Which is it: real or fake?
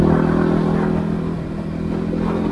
real